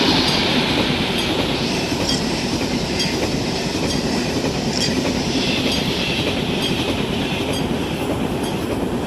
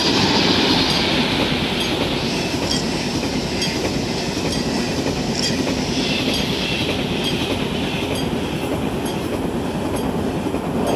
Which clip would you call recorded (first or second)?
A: second